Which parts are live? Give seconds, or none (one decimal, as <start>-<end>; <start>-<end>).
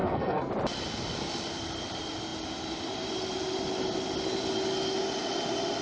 0.5-5.8